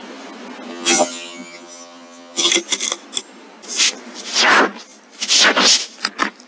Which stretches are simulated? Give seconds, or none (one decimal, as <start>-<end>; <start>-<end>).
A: 0.7-2.5